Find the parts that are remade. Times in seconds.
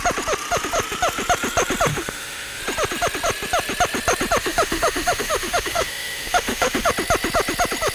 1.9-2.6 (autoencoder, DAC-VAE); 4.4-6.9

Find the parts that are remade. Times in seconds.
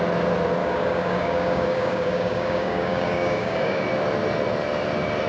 0.6-3.8 (codec, DAC)